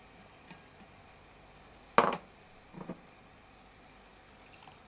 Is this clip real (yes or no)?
yes